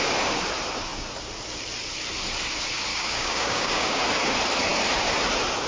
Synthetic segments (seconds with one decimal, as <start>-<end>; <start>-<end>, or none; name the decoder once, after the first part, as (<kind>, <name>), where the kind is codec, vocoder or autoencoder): 2.9-4.0 (codec, DAC)